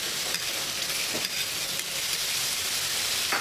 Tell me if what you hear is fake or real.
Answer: real